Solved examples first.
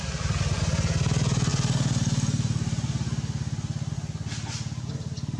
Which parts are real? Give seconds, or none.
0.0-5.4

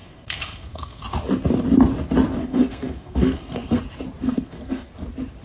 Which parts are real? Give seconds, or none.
1.0-2.4; 3.8-4.2; 4.9-5.4